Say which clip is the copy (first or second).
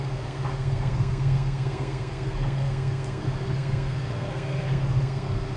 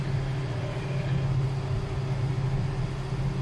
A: first